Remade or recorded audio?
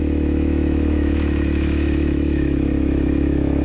remade